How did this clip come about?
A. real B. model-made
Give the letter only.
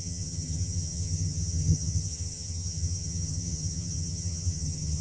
B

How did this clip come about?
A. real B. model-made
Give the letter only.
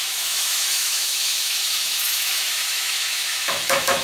B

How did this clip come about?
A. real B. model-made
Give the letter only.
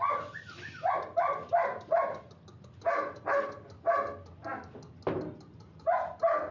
A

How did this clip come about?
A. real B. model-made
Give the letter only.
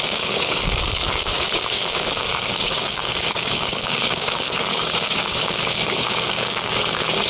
B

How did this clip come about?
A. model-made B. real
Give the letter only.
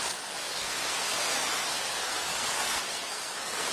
A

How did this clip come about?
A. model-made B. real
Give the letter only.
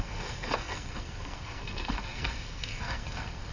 A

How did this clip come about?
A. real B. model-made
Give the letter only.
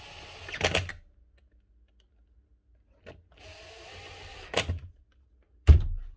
A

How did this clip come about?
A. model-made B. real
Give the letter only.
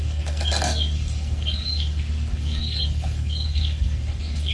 A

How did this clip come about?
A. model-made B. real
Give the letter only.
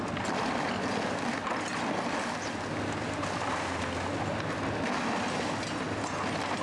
B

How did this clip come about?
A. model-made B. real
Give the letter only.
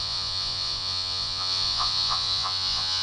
A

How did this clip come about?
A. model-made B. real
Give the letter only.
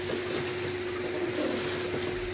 B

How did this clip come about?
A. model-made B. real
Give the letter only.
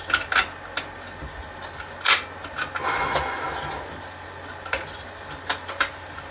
B